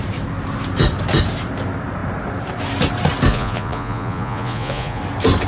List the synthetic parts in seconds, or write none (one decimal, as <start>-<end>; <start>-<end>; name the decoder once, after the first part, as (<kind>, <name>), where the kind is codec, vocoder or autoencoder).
3.3-5.0 (vocoder, Vocos)